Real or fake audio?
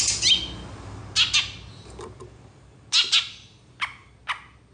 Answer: real